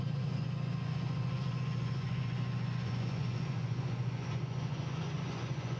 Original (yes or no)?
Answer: no